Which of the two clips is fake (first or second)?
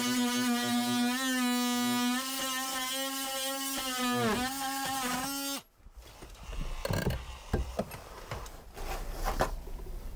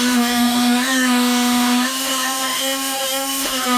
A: second